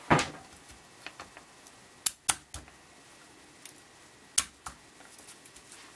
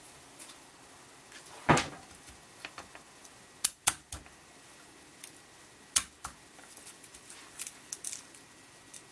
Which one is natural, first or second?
first